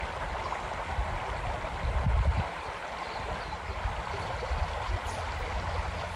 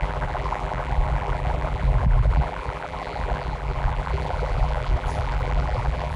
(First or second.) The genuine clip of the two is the first